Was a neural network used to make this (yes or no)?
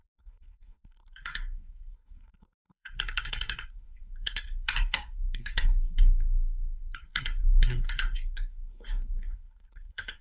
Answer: yes